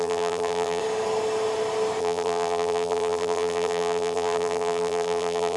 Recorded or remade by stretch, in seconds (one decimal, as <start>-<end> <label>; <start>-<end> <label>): 0.0-0.8 remade; 0.8-2.0 recorded; 2.0-5.6 remade

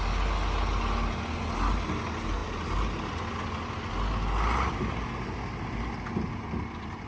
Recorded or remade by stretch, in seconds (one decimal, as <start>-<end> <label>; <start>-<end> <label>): 0.0-7.1 recorded

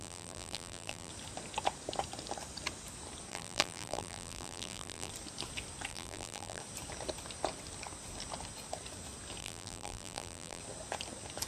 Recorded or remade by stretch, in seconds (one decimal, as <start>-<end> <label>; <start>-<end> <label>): 0.0-1.1 remade; 1.1-3.3 recorded; 3.3-5.1 remade; 5.1-5.9 recorded; 5.9-6.6 remade; 6.6-9.4 recorded; 9.4-10.6 remade; 10.6-11.5 recorded

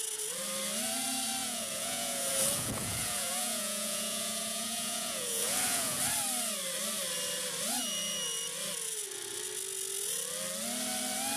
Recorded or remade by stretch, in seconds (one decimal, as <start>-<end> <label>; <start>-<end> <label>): 0.0-1.4 recorded; 1.4-6.0 remade; 6.0-11.4 recorded

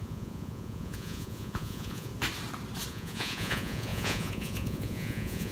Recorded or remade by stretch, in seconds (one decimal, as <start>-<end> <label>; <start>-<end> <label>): 0.0-2.1 remade; 2.1-2.9 recorded; 2.9-5.5 remade